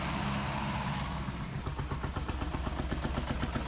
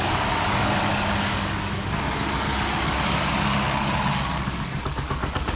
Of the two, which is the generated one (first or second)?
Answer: second